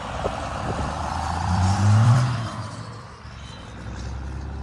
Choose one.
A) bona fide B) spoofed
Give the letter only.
B